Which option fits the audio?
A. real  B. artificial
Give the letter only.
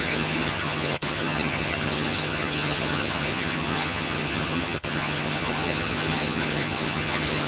B